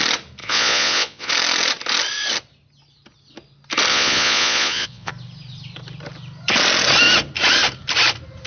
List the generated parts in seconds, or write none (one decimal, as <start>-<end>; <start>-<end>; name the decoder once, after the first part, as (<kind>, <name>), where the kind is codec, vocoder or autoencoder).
0.4-1.3 (vocoder, Vocos); 3.9-5.1